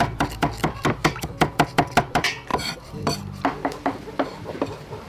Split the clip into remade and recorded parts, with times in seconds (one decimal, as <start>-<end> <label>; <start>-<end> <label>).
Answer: 0.0-1.0 remade; 1.0-2.0 recorded; 2.0-5.1 remade